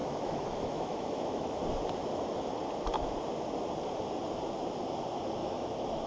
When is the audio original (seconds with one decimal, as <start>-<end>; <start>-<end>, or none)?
1.6-5.4